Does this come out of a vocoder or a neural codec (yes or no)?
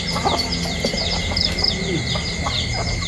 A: no